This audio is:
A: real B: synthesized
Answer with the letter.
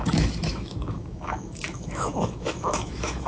B